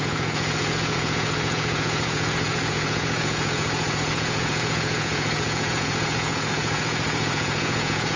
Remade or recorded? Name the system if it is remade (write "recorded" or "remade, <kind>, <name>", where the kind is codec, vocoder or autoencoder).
remade, vocoder, Vocos